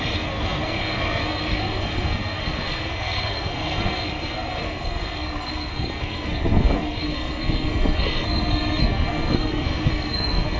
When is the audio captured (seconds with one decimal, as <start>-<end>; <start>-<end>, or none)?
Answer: none